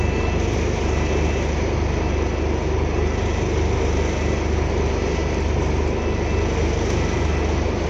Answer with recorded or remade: recorded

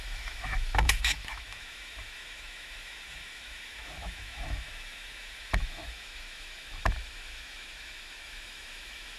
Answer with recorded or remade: remade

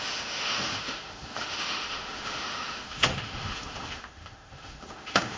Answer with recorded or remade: remade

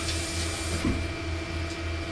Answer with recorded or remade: recorded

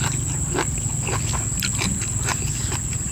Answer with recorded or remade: recorded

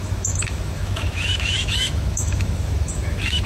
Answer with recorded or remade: remade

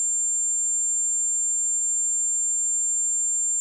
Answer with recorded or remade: remade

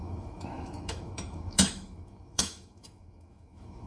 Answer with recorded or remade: remade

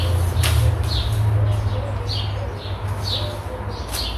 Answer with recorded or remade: recorded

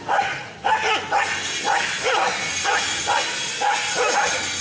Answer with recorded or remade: recorded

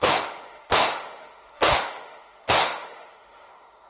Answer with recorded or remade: remade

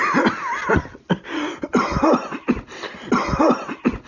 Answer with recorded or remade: recorded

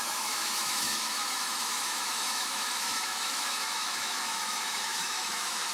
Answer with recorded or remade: remade